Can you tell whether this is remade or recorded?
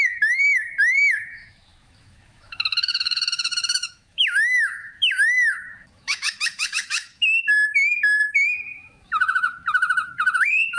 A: remade